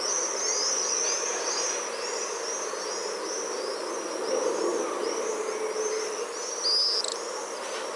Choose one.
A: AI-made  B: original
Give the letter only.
B